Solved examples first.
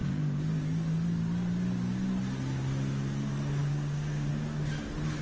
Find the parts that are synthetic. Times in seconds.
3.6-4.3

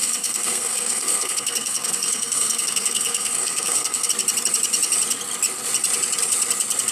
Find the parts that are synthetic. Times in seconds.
0.0-4.1

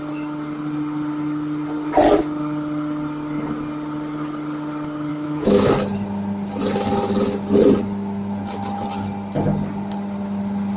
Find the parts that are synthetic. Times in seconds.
5.1-5.7